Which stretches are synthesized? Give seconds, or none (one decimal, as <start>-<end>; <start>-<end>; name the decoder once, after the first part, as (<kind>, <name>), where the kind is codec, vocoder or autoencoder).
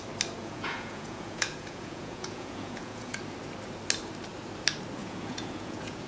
0.4-3.2 (vocoder, Vocos); 5.0-6.1